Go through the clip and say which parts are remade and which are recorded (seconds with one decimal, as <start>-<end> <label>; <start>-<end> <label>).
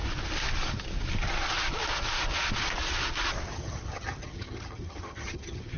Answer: 0.0-3.5 recorded; 3.5-5.8 remade